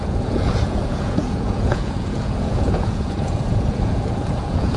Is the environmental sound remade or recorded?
remade